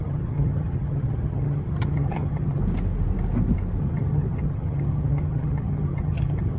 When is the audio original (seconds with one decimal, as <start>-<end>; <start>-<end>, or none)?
2.6-3.8